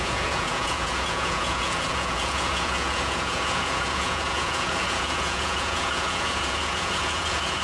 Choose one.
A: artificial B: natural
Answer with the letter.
A